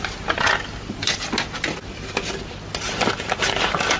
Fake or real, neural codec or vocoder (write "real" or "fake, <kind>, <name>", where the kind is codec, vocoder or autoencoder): real